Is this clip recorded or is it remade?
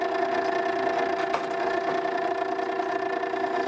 recorded